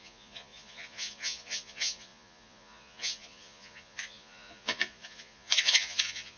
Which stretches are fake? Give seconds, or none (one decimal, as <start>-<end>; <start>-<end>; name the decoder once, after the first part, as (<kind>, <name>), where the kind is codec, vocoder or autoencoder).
0.0-6.4 (vocoder, Vocos)